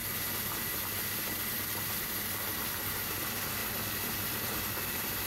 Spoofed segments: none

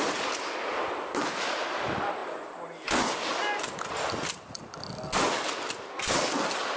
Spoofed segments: none

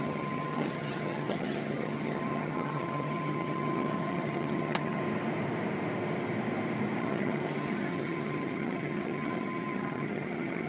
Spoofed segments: 0.0-5.0 (vocoder, HiFi-GAN); 7.0-10.7

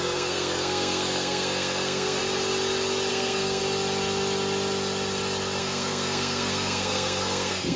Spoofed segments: 0.0-2.2 (codec, SNAC); 3.1-3.6; 5.6-7.8

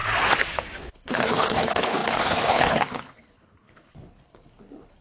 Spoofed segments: 0.8-5.0 (codec, HILCodec)